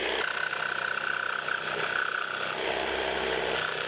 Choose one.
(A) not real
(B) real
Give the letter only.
B